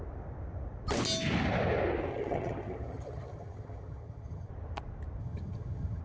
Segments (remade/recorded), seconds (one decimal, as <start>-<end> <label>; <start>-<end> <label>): 0.0-2.1 recorded; 2.1-4.5 remade; 4.5-5.2 recorded; 5.2-6.0 remade